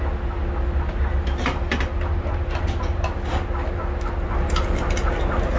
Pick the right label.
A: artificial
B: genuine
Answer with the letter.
B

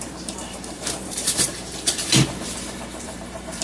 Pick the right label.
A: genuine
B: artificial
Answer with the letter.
B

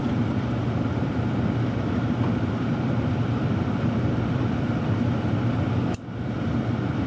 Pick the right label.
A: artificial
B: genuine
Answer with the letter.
A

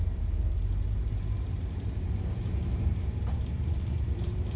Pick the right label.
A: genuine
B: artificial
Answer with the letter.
B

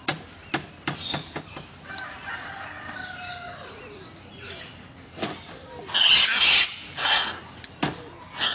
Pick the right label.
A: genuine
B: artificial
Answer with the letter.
A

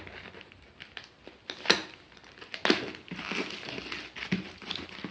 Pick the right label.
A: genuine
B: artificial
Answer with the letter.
A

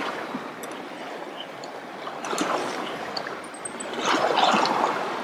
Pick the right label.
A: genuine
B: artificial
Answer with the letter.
A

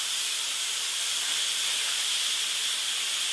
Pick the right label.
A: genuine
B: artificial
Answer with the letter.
A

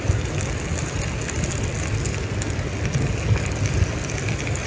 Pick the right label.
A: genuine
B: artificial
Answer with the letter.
A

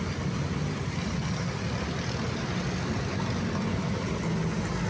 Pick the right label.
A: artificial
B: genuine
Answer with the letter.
B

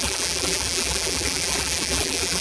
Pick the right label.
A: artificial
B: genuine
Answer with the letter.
A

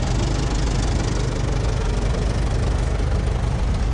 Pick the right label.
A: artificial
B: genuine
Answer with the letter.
B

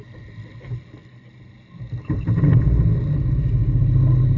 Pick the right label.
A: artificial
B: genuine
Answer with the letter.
B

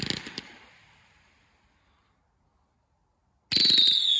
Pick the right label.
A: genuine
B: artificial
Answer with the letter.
A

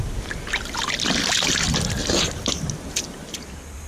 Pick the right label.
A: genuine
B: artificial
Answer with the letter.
A